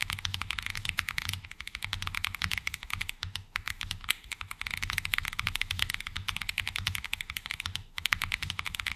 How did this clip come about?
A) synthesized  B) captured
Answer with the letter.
A